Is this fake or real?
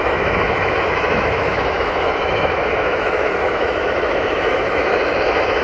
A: fake